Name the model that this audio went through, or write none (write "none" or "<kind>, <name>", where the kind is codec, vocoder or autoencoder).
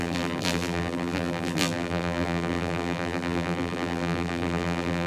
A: vocoder, BigVGAN v2